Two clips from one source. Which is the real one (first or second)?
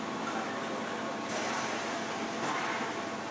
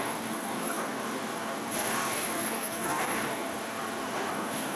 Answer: first